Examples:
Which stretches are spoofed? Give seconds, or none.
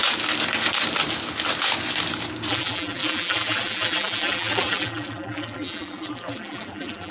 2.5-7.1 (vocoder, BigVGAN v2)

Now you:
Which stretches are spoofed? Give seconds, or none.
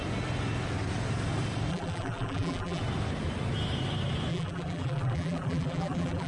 1.7-2.8 (vocoder, BigVGAN v2); 4.3-6.3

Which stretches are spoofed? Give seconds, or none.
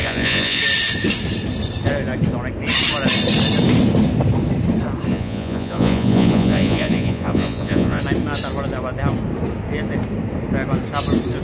0.0-0.6 (vocoder, Vocos); 5.1-8.0